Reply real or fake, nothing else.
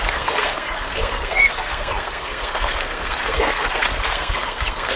fake